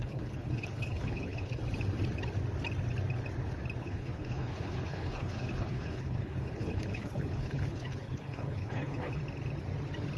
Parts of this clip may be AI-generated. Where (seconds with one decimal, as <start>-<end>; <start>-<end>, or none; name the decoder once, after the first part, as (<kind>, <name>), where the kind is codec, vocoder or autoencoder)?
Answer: 0.0-1.6 (codec, HILCodec); 3.8-9.2